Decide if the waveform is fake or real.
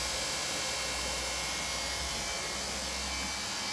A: real